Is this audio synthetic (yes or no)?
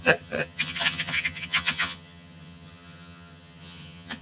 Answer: yes